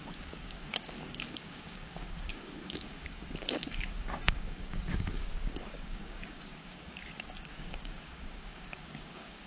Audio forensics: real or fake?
fake